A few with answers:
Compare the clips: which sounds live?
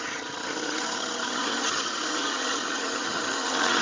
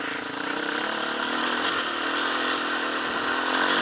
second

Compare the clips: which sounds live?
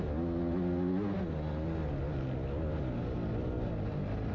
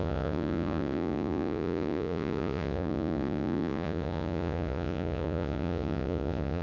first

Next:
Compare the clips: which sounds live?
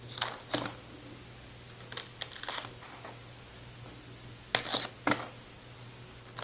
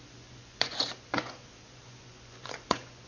first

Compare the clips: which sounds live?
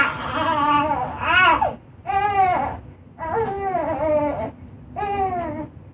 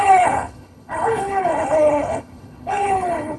first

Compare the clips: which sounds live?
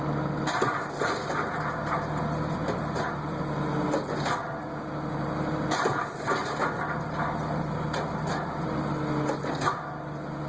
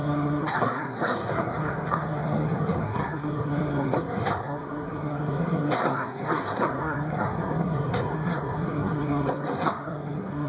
first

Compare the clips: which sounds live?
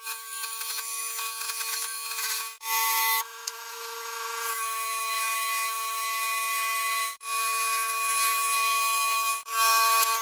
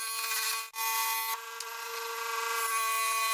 second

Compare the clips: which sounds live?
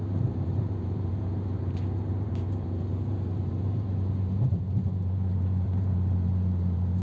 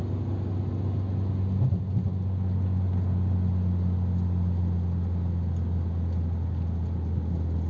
second